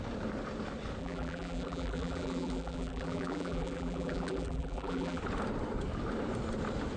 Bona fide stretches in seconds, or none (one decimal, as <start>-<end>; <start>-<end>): 0.0-1.0; 5.2-7.0